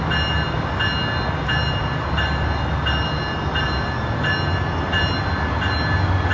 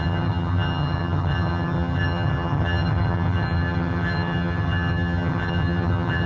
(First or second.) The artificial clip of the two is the second